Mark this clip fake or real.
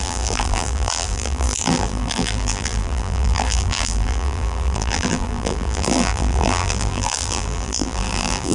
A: fake